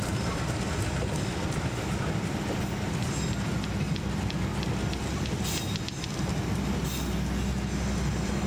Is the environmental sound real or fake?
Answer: real